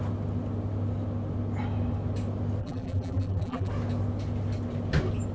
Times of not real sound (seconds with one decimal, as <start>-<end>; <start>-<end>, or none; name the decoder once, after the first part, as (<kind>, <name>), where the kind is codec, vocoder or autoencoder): 2.6-3.7 (vocoder, BigVGAN v2)